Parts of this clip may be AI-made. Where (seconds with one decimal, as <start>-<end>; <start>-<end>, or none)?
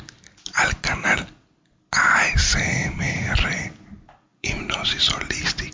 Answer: 4.3-5.0